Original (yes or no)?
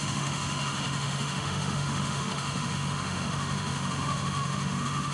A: no